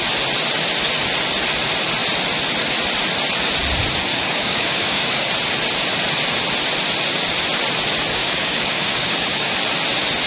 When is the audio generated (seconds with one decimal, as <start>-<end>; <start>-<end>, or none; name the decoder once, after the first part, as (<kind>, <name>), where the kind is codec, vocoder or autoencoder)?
4.1-5.3 (codec, DAC); 8.2-9.5